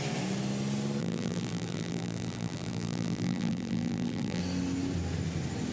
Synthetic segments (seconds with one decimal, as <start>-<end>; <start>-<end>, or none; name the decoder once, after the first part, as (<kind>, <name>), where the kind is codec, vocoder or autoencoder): 1.0-4.4 (vocoder, BigVGAN v2)